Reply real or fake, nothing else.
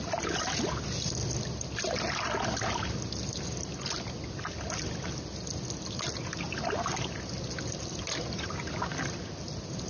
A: real